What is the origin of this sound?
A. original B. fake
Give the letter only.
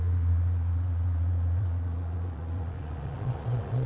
B